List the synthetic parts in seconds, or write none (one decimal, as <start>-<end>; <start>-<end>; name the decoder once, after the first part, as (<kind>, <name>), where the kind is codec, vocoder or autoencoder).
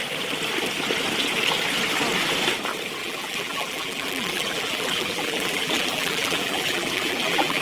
3.0-7.6 (vocoder, BigVGAN v2)